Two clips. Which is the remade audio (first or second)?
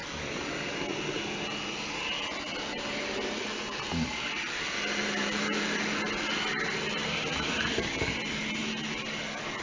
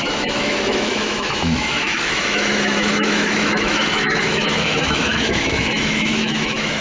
second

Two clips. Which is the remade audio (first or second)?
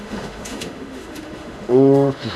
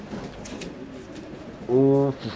first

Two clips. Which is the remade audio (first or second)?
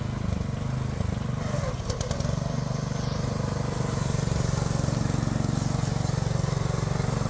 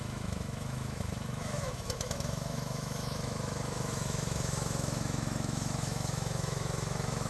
second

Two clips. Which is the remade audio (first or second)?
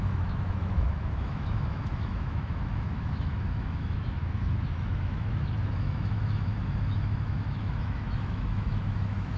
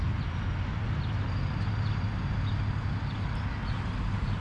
first